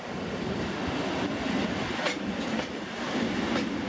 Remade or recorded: recorded